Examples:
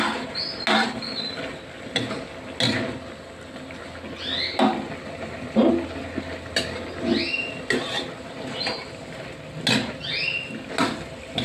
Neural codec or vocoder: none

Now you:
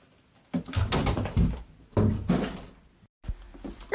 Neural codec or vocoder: none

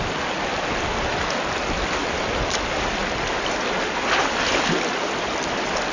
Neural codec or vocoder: none